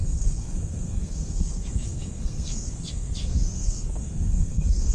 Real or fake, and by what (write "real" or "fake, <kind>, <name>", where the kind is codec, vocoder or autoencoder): fake, codec, SNAC